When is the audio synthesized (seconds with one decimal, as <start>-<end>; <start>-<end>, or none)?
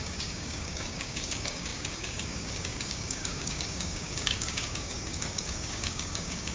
0.0-6.5